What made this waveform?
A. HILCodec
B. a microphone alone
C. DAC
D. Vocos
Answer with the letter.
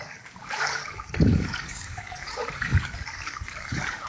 C